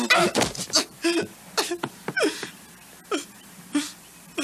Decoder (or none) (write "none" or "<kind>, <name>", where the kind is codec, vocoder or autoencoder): none